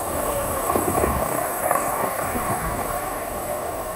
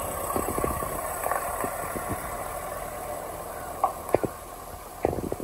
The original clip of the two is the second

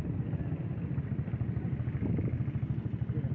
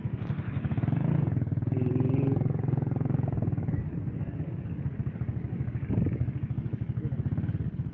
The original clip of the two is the first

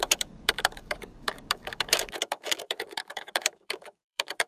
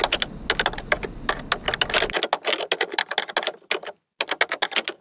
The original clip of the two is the second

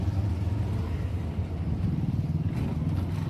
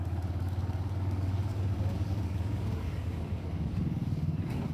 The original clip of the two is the first